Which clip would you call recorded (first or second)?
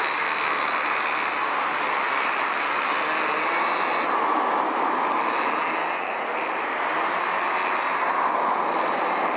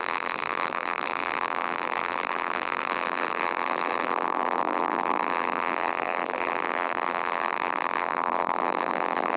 first